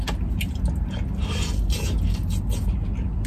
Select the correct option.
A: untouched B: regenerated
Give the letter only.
A